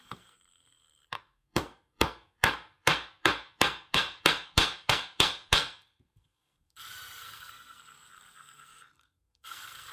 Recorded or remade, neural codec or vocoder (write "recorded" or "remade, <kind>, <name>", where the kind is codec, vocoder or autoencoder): remade, codec, SNAC